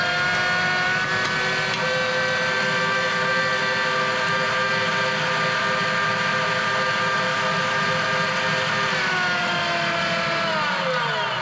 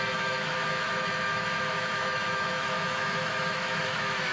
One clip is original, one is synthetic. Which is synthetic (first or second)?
second